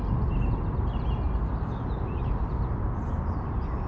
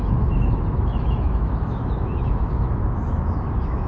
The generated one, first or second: second